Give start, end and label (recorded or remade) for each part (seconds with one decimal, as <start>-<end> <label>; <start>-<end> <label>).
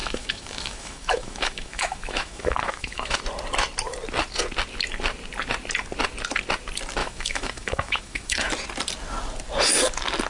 0.0-3.2 remade; 3.2-7.0 recorded; 7.0-8.5 remade; 8.5-10.3 recorded